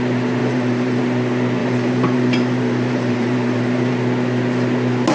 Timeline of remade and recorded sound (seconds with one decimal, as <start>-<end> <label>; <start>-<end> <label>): 0.0-0.4 recorded; 0.4-1.0 remade; 1.0-1.6 recorded; 1.6-3.9 remade; 3.9-5.1 recorded